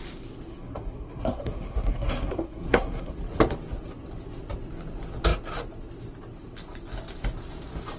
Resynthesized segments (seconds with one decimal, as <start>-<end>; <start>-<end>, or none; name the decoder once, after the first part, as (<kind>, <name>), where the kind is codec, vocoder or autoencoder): 0.5-3.1 (codec, SNAC)